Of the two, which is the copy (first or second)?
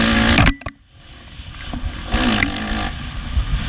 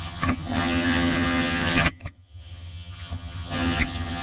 second